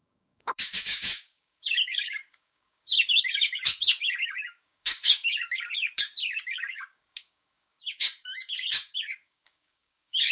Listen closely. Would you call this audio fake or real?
fake